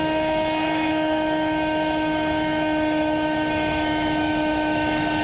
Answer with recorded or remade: remade